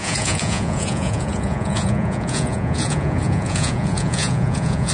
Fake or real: fake